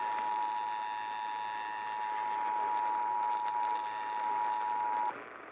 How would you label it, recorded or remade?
recorded